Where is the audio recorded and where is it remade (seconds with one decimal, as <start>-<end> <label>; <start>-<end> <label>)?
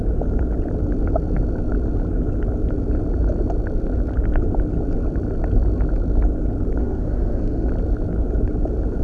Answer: 0.0-6.8 recorded; 6.8-7.7 remade; 7.7-9.0 recorded